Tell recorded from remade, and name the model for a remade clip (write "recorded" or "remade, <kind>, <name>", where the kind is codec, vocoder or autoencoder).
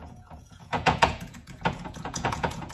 remade, vocoder, Vocos